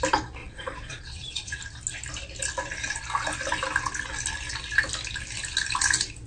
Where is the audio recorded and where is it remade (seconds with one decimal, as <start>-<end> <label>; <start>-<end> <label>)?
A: 0.0-0.4 recorded; 0.4-1.6 remade; 1.6-6.3 recorded